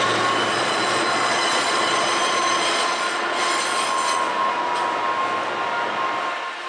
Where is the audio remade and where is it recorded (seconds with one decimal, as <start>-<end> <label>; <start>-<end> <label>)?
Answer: 0.0-0.5 recorded; 0.5-3.5 remade; 3.5-6.7 recorded